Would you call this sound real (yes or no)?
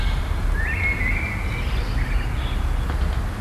yes